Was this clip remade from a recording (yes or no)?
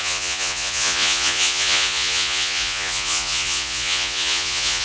yes